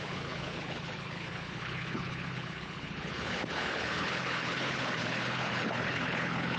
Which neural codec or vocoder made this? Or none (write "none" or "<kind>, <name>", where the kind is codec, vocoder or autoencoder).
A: codec, HILCodec